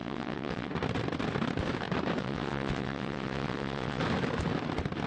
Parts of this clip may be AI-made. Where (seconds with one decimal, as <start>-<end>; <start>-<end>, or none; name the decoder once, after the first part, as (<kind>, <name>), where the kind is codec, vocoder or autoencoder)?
0.0-0.7 (vocoder, WaveNeXt); 2.2-4.0